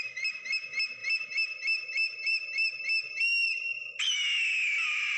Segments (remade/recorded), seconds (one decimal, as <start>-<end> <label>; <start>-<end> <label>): 0.0-1.0 recorded; 1.0-4.1 remade; 4.1-5.2 recorded

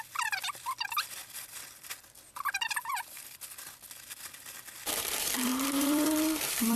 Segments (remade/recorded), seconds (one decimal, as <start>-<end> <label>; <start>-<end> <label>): 0.0-6.8 remade

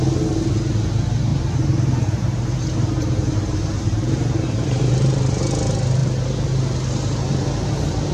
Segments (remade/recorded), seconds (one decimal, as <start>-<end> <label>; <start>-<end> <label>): 0.0-1.3 recorded; 1.3-5.4 remade; 5.4-8.1 recorded

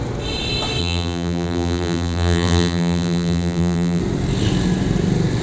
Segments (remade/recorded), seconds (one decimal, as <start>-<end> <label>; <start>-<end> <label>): 0.0-0.8 recorded; 0.8-4.0 remade; 4.0-5.4 recorded